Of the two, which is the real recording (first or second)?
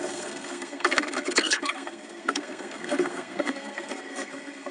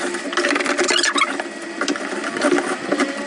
second